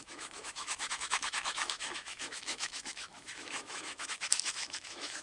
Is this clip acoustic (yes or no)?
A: no